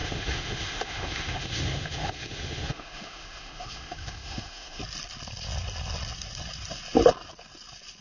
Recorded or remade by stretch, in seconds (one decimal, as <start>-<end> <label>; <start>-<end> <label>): 0.0-4.8 remade; 4.8-8.0 recorded